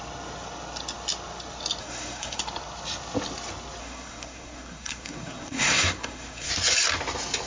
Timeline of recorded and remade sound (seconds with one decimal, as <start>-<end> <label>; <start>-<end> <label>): 0.0-1.8 recorded; 1.8-2.4 remade; 2.4-3.8 recorded; 3.8-6.5 remade; 6.5-7.5 recorded

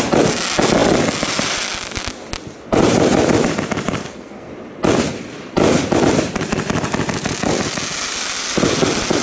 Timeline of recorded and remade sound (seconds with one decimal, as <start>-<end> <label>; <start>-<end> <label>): 0.0-4.0 recorded; 4.0-4.5 remade; 4.5-9.2 recorded

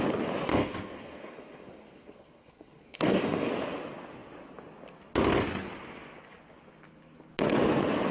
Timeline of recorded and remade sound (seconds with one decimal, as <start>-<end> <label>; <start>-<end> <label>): 0.0-0.5 recorded; 0.5-3.5 remade; 3.5-8.1 recorded

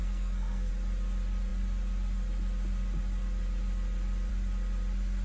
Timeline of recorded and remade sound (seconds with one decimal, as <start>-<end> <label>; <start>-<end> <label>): 0.0-0.7 remade; 0.7-5.2 recorded